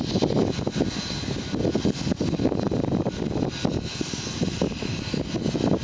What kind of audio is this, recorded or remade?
recorded